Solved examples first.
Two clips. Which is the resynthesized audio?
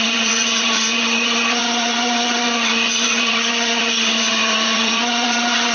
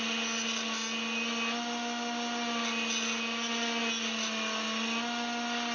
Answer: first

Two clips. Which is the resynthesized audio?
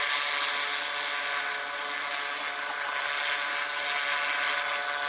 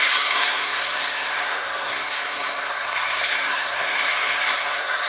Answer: second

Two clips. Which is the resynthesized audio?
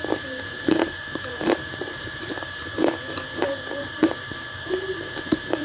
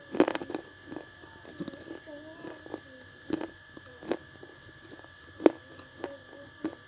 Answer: first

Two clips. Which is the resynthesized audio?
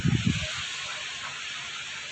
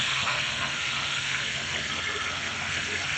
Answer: second